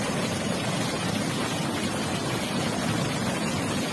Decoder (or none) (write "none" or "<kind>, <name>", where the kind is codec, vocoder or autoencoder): none